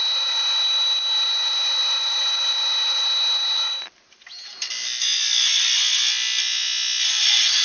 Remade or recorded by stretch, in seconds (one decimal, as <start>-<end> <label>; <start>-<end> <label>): 0.0-7.6 recorded